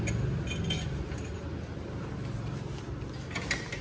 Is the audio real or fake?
real